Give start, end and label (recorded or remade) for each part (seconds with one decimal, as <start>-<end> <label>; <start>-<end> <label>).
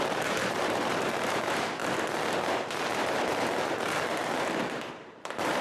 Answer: 0.0-1.8 remade; 1.8-3.3 recorded; 3.3-5.6 remade